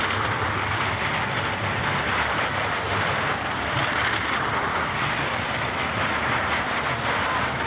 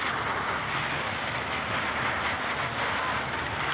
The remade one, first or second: first